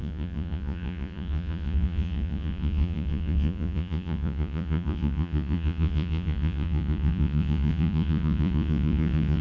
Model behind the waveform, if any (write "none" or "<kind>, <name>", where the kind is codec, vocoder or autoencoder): vocoder, Vocos